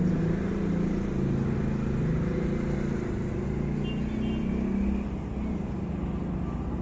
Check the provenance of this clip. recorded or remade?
recorded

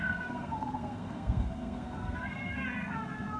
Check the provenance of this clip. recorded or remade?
remade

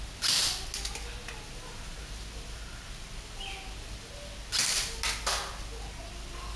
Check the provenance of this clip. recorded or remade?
recorded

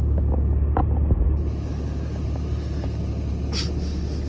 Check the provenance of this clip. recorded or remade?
recorded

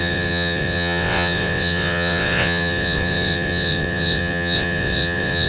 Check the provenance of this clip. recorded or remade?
remade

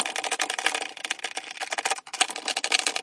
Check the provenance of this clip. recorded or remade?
recorded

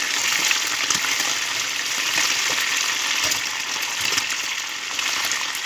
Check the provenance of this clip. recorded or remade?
recorded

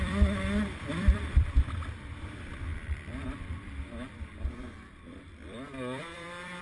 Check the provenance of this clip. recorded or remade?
remade